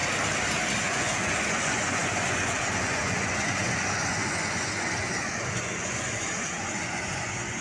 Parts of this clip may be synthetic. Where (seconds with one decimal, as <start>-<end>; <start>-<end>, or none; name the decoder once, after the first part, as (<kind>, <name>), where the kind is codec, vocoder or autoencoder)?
0.8-7.6 (vocoder, Vocos)

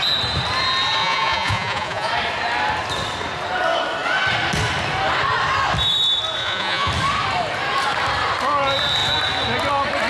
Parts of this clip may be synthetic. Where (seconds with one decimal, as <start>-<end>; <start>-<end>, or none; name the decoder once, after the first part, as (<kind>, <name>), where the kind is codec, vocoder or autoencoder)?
1.0-2.1 (vocoder, Vocos); 6.4-6.9

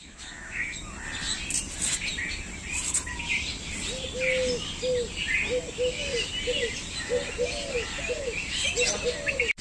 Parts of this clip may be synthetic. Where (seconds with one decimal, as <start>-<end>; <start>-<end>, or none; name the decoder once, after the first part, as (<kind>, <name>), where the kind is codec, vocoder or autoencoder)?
0.0-0.8 (autoencoder, DAC-VAE)

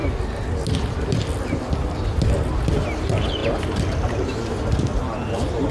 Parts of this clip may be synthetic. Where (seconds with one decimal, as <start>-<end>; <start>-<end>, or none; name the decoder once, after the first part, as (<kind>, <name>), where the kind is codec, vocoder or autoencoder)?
none

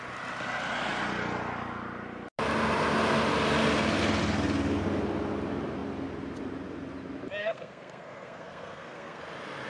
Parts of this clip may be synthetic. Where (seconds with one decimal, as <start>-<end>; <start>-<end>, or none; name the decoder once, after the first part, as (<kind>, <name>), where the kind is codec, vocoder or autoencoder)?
7.4-9.2 (codec, SNAC)

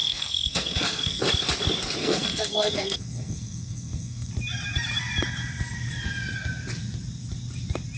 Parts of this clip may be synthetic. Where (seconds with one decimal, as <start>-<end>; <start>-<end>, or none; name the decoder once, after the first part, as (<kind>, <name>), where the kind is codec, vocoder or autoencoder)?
0.0-1.2 (codec, SNAC); 2.0-4.3

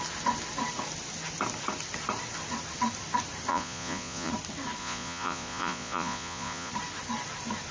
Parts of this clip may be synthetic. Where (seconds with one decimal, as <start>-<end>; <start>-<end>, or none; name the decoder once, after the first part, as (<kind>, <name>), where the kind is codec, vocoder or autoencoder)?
3.5-4.3 (vocoder, Vocos); 4.8-6.7